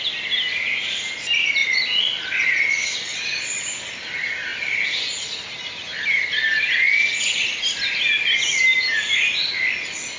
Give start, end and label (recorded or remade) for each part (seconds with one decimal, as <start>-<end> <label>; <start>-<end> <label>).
0.0-1.6 recorded; 1.6-2.6 remade; 2.6-3.1 recorded; 3.1-3.8 remade; 3.8-10.2 recorded